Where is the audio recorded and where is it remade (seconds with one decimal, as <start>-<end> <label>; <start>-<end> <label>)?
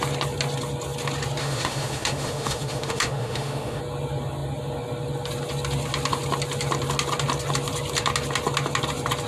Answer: 0.0-1.4 recorded; 1.4-3.8 remade; 3.8-9.3 recorded